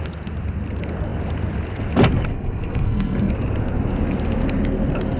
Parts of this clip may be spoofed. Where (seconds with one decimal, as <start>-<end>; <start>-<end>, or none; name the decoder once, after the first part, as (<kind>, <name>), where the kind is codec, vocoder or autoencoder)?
2.3-3.3 (codec, SNAC)